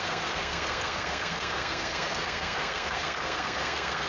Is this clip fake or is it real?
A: fake